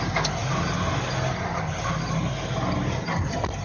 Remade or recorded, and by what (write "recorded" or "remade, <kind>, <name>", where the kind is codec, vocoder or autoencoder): recorded